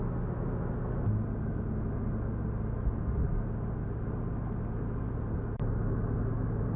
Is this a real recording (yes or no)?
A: yes